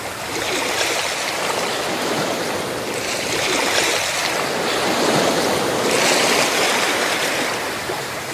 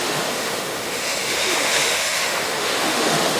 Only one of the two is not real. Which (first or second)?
second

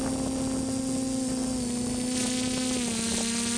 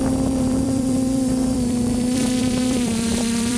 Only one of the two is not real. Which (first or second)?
second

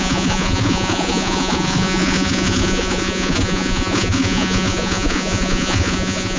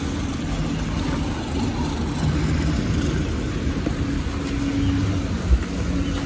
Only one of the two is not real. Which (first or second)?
first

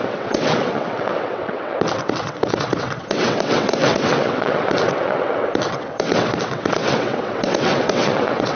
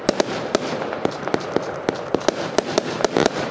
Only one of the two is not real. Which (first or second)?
first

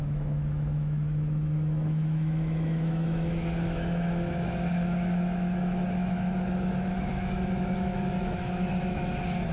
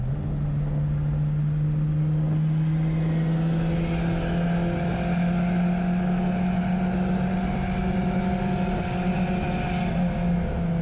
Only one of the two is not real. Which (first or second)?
first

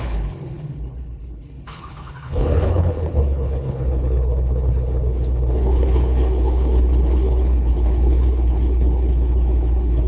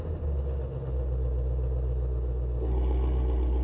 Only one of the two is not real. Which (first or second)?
first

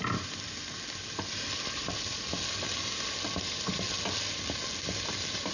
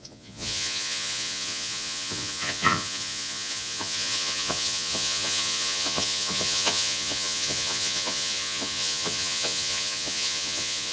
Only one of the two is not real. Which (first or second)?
second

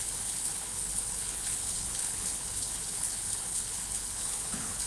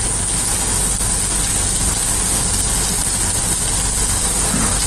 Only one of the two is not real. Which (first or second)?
first